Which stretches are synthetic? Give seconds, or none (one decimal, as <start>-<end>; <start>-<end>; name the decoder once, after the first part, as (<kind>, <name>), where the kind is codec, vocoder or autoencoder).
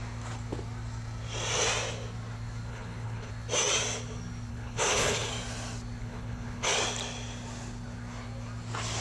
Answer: 2.7-3.3 (codec, HILCodec); 4.5-5.3; 6.0-6.7